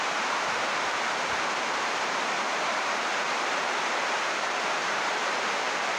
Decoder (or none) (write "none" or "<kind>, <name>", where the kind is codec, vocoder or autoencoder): vocoder, BigVGAN v2